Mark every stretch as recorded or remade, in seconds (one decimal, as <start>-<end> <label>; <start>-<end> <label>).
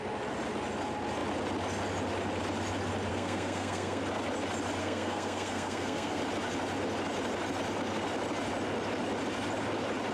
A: 0.0-3.1 recorded; 3.1-4.0 remade; 4.0-4.8 recorded; 4.8-6.2 remade; 6.2-10.1 recorded